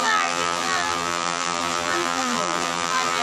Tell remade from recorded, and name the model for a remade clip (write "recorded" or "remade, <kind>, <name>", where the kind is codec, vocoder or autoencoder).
remade, vocoder, BigVGAN v2